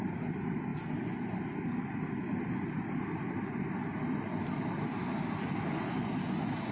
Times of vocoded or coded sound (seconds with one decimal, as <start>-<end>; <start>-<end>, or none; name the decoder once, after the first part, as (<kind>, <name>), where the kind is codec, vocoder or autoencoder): none